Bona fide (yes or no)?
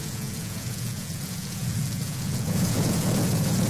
no